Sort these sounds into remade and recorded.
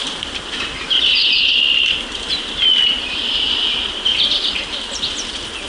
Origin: remade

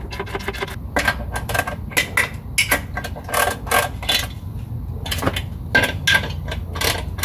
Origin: recorded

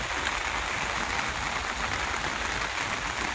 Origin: recorded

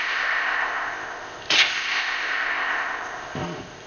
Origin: remade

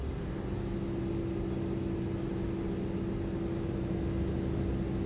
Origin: recorded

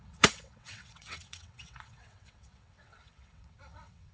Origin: remade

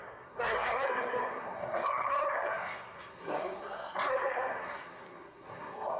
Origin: remade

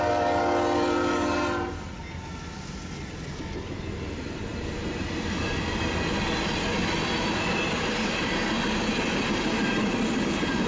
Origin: recorded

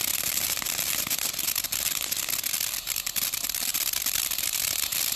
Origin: recorded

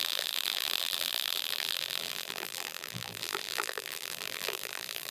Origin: remade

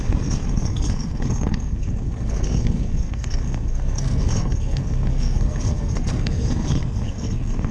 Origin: remade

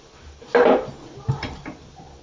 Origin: recorded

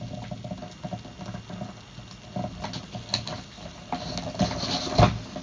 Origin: recorded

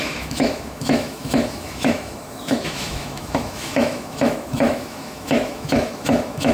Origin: remade